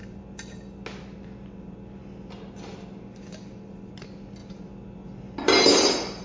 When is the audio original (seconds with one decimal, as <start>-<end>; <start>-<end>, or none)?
0.0-6.2